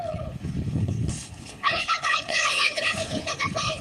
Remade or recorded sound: remade